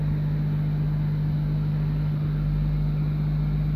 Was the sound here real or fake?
real